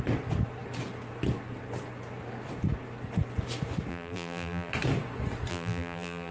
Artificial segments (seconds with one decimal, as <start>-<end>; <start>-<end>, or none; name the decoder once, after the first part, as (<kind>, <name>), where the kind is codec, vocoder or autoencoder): 3.9-4.7 (vocoder, BigVGAN v2); 5.5-6.3

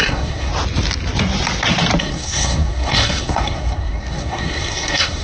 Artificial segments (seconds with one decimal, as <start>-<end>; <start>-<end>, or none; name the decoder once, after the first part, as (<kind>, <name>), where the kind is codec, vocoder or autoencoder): 0.0-0.5 (codec, SNAC); 2.0-5.2

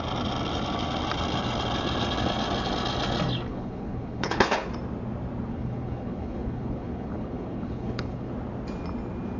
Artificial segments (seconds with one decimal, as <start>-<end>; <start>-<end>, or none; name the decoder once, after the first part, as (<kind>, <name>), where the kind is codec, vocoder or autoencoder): 3.5-4.7 (codec, HILCodec); 5.5-8.3

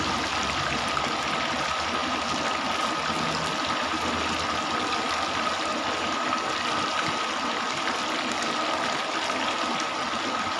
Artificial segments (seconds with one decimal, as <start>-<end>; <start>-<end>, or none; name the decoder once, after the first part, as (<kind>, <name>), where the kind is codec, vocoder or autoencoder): none

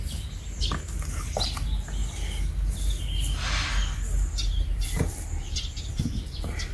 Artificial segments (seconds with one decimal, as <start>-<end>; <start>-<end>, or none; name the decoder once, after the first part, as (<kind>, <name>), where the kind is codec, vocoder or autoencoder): none